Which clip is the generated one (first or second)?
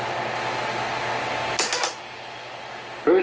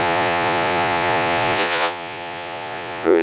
second